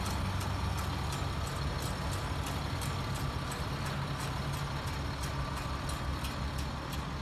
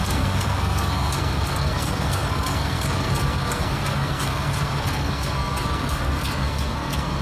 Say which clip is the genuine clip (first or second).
first